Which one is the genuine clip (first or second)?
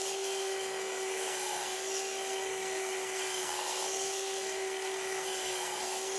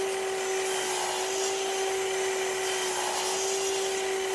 second